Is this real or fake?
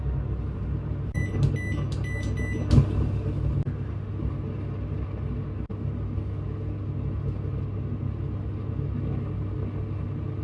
real